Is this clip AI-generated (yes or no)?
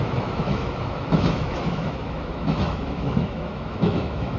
yes